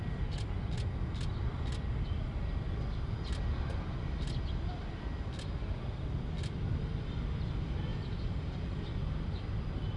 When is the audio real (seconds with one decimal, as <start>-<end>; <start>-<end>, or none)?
0.0-7.9; 9.0-10.0